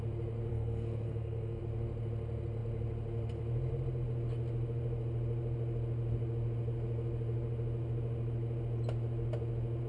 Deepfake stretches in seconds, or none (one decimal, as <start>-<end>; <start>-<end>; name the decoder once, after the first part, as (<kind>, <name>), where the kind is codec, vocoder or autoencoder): 0.5-1.6 (codec, SNAC)